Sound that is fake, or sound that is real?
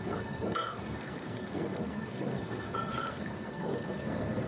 fake